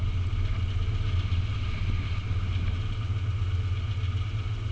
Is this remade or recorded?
recorded